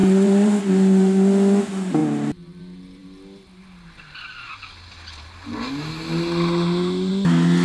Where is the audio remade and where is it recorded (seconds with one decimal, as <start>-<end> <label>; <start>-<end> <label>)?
0.0-0.6 remade; 0.6-7.6 recorded